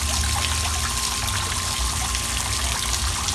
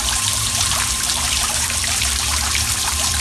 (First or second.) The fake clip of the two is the second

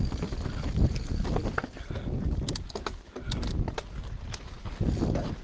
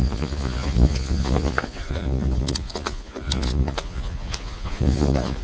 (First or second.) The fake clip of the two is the second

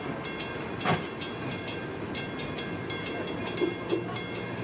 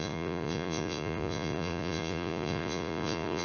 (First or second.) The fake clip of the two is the second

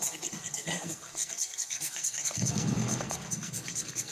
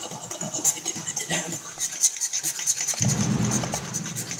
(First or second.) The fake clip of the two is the first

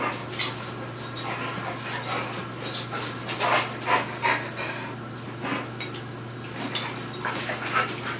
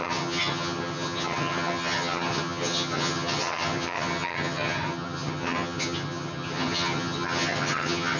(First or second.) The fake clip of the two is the second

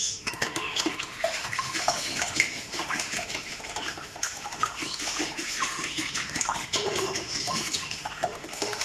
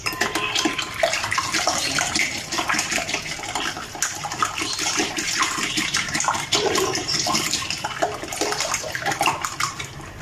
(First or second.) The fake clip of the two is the first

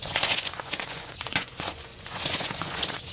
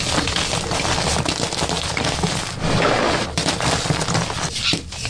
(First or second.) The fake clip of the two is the first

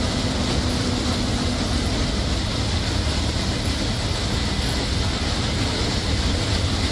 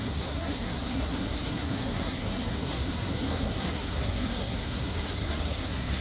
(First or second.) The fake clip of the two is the second